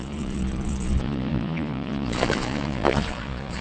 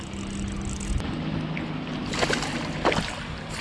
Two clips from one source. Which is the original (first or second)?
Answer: second